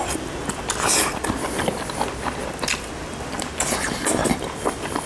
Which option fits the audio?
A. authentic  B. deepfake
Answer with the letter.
A